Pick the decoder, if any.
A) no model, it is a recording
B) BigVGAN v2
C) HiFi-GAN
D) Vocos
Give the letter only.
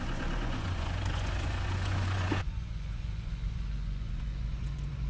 D